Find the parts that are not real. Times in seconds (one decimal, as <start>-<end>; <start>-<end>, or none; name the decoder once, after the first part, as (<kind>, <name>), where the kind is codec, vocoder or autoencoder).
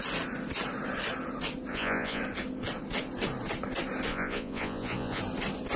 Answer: 1.7-2.2 (vocoder, Vocos); 4.1-5.2